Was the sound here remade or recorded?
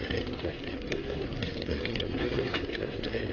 remade